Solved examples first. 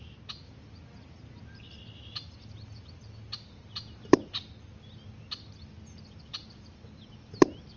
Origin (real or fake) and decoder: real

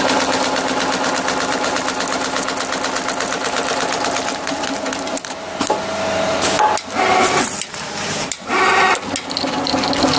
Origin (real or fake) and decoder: real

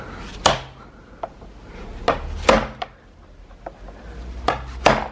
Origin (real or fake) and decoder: real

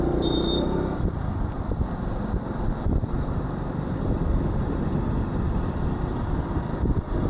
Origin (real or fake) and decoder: real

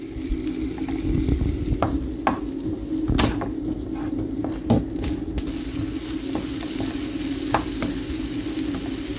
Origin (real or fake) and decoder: real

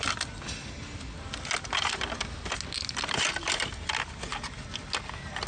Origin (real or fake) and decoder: real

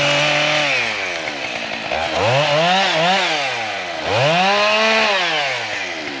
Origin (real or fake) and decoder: real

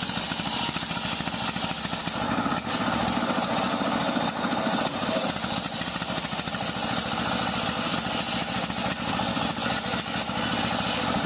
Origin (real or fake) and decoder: real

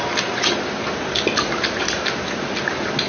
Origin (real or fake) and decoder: real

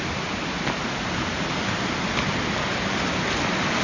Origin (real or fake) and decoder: real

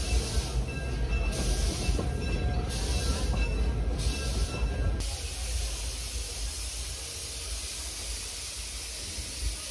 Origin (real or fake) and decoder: real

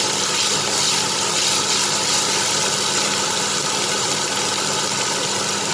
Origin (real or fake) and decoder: real